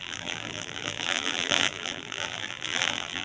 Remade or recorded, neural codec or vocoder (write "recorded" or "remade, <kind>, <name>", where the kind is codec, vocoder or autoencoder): remade, vocoder, BigVGAN v2